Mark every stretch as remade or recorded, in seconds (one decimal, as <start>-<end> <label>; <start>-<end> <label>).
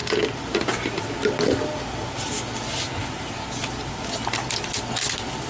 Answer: 0.0-5.5 recorded